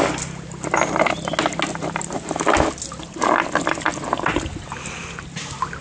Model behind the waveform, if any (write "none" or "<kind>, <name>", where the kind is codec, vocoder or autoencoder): none